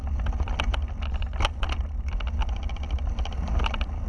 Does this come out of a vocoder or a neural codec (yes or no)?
no